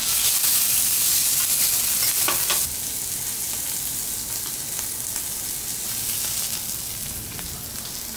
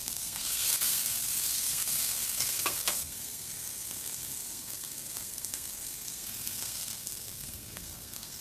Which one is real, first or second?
first